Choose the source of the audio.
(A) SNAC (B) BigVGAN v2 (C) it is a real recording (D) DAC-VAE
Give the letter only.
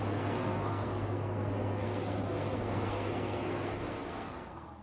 A